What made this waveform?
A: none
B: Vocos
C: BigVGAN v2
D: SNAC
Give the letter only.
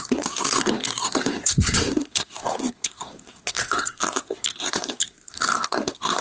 D